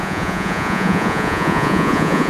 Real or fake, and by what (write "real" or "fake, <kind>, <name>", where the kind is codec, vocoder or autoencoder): fake, vocoder, Vocos